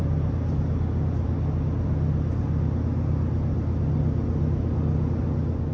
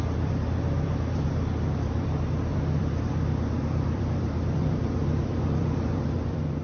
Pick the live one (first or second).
first